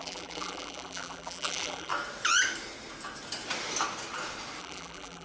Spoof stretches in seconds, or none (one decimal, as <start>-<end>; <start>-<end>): 0.0-1.9; 4.6-5.2